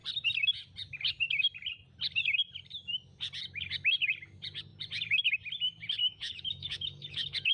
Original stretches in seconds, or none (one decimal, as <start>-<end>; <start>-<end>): 0.0-6.0